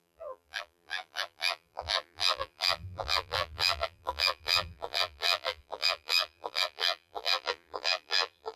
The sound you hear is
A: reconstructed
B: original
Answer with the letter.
A